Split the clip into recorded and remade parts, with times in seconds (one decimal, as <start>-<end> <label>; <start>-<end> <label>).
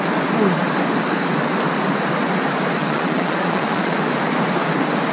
0.0-2.8 recorded; 2.8-4.0 remade; 4.0-5.1 recorded